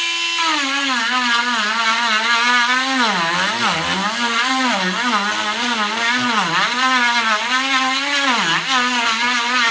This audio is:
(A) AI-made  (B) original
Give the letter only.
B